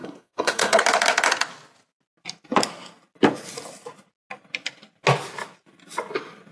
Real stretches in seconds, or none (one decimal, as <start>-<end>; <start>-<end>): 0.8-6.5